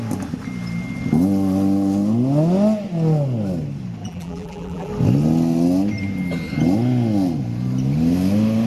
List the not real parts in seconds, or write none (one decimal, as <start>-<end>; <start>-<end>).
4.0-4.9